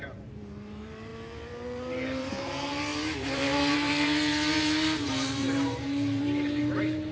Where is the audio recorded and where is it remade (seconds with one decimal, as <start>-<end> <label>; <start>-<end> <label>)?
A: 0.0-7.1 remade